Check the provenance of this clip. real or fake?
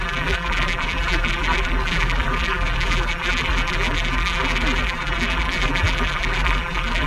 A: fake